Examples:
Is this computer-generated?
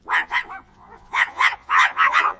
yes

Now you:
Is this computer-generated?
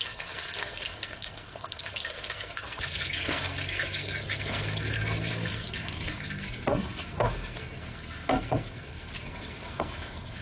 yes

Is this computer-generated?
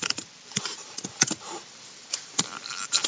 no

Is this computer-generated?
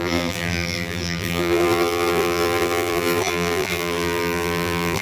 yes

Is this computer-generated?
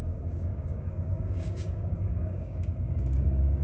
yes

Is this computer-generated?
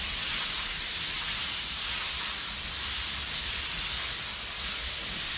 no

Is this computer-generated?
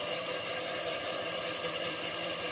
yes